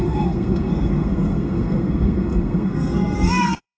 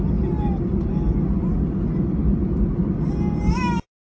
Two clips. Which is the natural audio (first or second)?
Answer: second